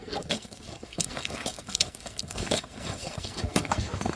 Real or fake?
fake